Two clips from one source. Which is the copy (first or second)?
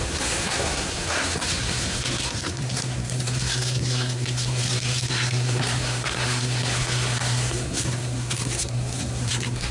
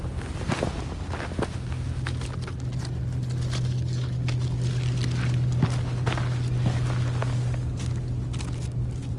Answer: first